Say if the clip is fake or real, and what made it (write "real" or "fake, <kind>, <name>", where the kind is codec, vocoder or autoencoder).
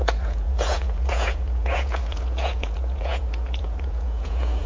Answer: fake, vocoder, Vocos